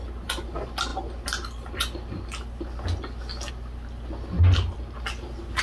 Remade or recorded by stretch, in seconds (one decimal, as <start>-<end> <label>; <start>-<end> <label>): 0.0-5.6 recorded